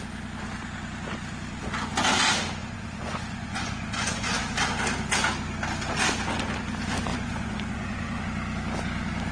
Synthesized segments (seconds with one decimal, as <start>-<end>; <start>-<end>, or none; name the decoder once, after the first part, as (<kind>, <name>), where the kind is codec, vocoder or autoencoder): 2.6-4.4 (vocoder, Vocos); 7.1-8.2